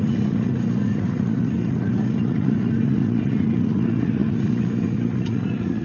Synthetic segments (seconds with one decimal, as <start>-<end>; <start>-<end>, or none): 0.0-5.8